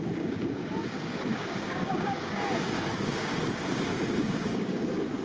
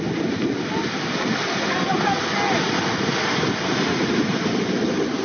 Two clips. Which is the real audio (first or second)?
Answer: second